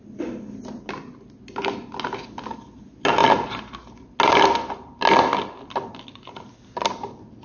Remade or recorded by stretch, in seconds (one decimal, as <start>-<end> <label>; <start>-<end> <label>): 0.0-7.4 recorded